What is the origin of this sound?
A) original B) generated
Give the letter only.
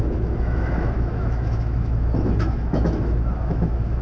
B